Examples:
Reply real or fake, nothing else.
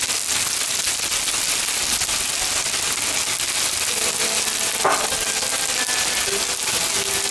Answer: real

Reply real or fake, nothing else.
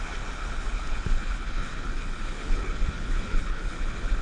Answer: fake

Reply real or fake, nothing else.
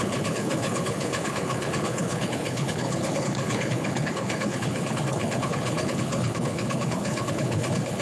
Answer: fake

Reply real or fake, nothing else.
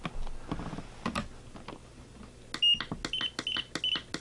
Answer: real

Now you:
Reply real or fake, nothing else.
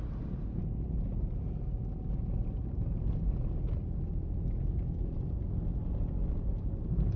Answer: real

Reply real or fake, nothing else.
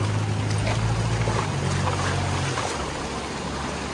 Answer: real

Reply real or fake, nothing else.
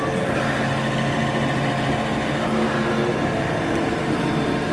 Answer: real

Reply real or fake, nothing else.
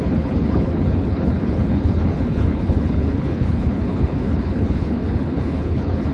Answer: fake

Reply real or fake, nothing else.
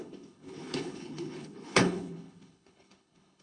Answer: fake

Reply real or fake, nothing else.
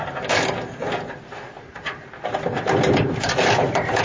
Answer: real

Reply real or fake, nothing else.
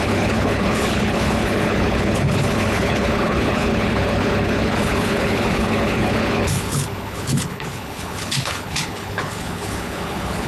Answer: fake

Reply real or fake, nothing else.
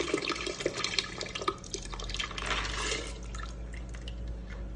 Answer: real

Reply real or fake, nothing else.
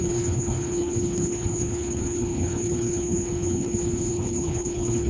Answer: fake